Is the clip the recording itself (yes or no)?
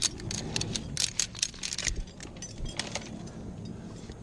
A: yes